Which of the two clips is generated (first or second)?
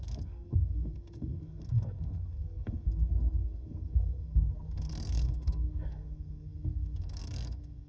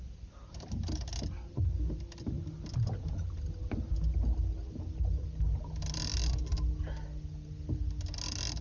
first